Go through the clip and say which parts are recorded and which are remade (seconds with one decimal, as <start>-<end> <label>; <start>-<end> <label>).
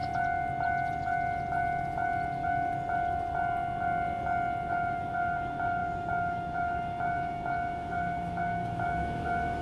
0.0-4.7 recorded; 4.7-9.6 remade